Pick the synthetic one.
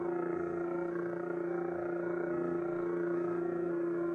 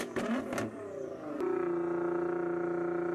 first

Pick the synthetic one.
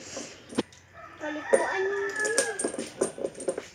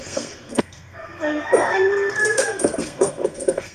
second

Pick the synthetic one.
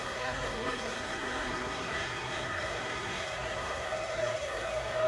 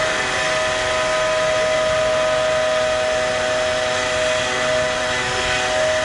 first